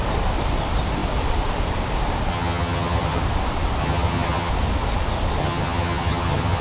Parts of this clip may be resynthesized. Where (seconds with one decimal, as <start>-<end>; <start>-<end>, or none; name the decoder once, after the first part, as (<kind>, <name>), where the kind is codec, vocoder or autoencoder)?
2.3-3.2 (vocoder, HiFi-GAN); 3.8-4.5; 5.4-6.6